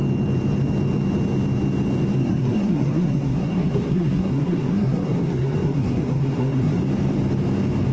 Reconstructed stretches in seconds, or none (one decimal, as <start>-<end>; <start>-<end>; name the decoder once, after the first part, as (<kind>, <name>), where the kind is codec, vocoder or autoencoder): 2.2-6.8 (codec, SNAC)